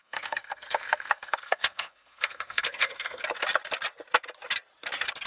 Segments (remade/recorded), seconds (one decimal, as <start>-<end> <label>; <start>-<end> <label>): 0.0-3.2 remade; 3.2-5.3 recorded